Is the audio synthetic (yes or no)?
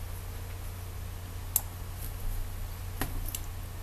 no